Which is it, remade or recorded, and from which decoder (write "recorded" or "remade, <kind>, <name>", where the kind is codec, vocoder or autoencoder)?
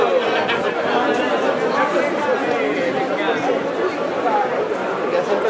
recorded